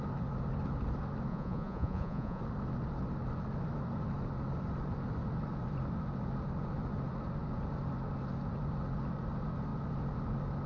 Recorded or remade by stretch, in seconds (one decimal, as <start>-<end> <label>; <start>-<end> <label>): 0.0-1.3 recorded; 1.3-2.4 remade; 2.4-10.7 recorded